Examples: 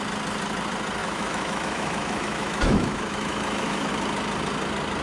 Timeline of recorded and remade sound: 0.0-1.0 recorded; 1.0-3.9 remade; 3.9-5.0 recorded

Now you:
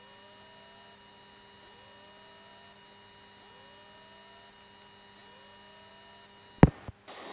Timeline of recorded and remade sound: 0.0-7.3 recorded

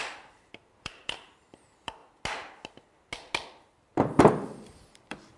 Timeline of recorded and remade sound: 0.0-2.0 remade; 2.0-3.7 recorded; 3.7-5.4 remade

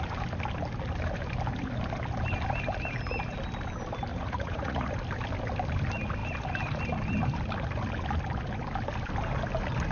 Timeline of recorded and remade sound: 0.0-4.1 recorded; 4.1-4.9 remade; 4.9-9.9 recorded

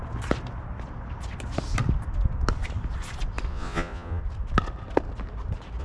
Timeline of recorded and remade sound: 0.0-3.5 recorded; 3.5-4.2 remade; 4.2-5.8 recorded

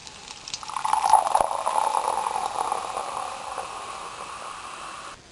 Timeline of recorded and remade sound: 0.0-5.3 recorded

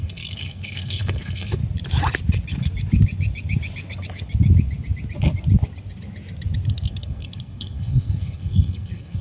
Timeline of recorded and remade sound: 0.0-1.6 remade; 1.6-6.7 recorded; 6.7-9.2 remade